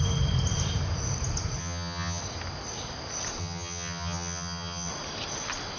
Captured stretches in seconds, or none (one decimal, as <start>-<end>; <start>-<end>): 0.0-1.6; 2.2-3.4; 4.9-5.8